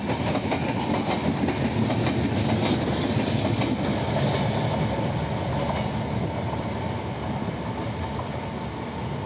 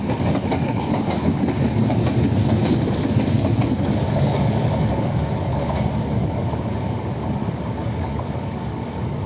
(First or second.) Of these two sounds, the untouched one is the first